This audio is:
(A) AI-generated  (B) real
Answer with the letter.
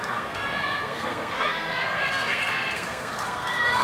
A